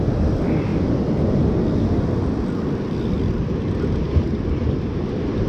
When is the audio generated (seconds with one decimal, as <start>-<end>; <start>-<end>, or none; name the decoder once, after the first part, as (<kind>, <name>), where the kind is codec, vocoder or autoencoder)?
none